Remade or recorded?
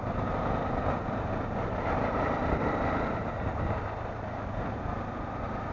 remade